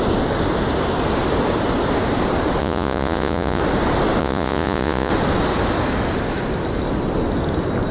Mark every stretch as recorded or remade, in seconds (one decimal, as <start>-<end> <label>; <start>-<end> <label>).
0.0-2.6 recorded; 2.6-3.6 remade; 3.6-4.2 recorded; 4.2-5.1 remade; 5.1-7.9 recorded